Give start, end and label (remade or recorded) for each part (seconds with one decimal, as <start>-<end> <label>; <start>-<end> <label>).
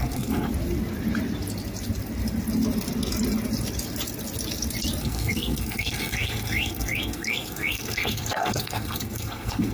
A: 0.0-0.5 remade; 0.5-5.0 recorded; 5.0-9.7 remade